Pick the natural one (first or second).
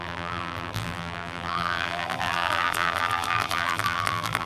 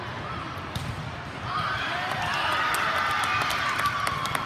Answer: second